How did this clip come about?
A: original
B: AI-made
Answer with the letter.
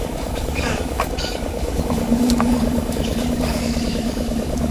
B